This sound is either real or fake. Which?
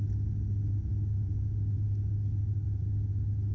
real